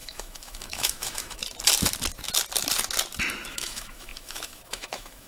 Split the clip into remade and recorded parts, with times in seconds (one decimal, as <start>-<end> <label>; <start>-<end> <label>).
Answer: 0.0-1.4 remade; 1.4-3.5 recorded; 3.5-5.3 remade